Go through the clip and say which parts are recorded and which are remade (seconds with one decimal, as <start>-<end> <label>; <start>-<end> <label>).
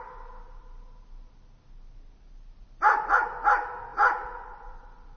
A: 0.0-3.9 recorded; 3.9-5.2 remade